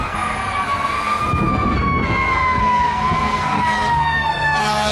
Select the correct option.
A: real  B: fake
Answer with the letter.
B